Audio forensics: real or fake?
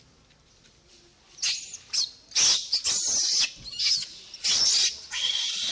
real